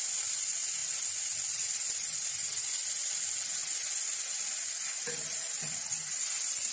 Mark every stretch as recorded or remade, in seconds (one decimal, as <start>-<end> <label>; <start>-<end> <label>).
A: 0.0-6.7 recorded